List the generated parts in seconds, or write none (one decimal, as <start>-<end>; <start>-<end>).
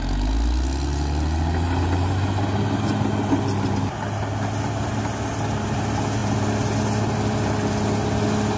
none